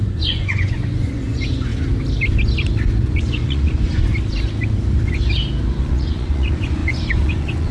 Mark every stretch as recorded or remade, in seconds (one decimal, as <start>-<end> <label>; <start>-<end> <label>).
0.0-1.7 remade; 1.7-3.0 recorded; 3.0-4.1 remade; 4.1-5.8 recorded; 5.8-7.7 remade